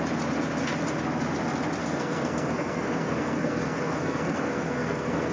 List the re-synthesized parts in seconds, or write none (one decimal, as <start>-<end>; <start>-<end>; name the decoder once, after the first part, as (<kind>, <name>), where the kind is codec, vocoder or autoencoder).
1.8-5.3 (codec, SNAC)